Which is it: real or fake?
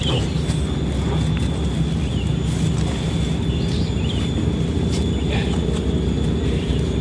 real